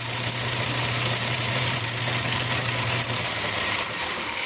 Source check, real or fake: fake